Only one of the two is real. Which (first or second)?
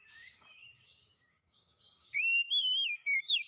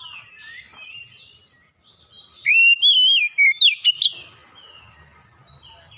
second